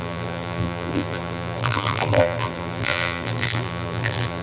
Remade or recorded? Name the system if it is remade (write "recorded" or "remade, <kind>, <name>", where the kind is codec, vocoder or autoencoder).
remade, vocoder, BigVGAN v2